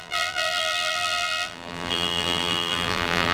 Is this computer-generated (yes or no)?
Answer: yes